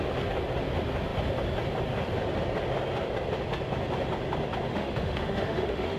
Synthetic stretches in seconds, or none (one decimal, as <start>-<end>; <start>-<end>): 4.7-6.0